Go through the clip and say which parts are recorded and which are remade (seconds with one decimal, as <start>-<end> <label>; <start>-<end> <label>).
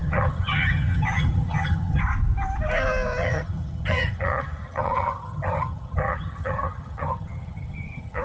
0.0-2.0 remade; 2.0-3.2 recorded; 3.2-8.2 remade